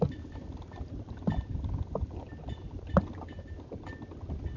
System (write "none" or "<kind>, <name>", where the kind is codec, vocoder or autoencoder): none